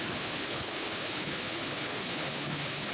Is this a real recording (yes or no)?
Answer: no